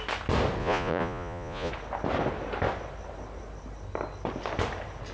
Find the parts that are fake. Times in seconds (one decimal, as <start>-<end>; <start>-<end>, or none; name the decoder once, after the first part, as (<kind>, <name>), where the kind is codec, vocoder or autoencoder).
0.6-1.7 (vocoder, Vocos)